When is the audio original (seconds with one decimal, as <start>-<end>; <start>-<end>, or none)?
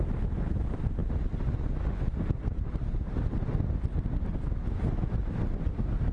0.0-6.1